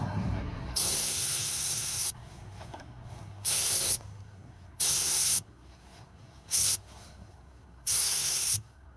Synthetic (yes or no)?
yes